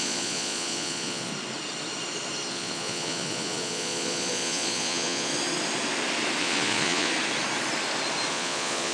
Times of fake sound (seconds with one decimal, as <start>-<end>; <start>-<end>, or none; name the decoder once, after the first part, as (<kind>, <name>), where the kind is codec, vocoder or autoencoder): 0.0-1.3 (vocoder, Vocos); 2.5-5.3; 6.4-7.1; 8.3-8.9